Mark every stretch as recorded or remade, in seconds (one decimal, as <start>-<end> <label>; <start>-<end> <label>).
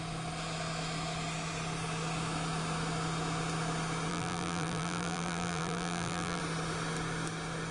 0.0-4.1 recorded; 4.1-6.4 remade; 6.4-7.7 recorded